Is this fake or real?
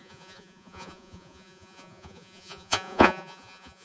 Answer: fake